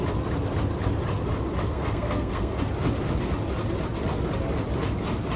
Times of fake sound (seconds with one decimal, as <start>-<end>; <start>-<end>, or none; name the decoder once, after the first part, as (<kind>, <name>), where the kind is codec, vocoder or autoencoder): 1.7-2.6 (codec, SNAC)

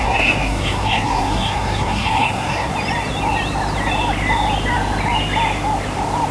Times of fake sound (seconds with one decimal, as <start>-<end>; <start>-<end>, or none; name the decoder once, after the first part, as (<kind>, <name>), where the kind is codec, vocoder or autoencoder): 0.0-2.7 (codec, SNAC)

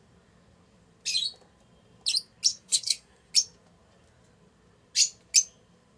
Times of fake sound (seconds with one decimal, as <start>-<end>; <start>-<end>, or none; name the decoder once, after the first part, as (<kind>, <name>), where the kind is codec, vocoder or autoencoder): 2.5-3.3 (codec, SNAC)